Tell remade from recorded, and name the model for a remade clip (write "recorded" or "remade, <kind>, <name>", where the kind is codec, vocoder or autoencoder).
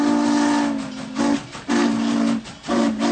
recorded